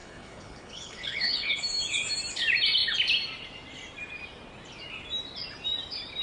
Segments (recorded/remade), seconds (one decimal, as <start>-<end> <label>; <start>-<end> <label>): 0.0-1.6 remade; 1.6-6.2 recorded